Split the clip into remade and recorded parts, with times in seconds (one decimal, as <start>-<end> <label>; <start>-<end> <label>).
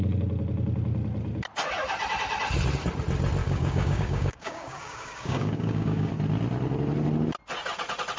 0.0-3.4 recorded; 3.4-6.1 remade; 6.1-8.2 recorded